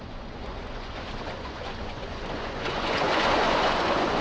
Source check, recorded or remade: remade